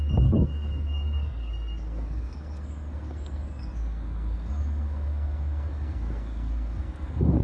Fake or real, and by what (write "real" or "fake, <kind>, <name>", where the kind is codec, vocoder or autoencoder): fake, codec, SNAC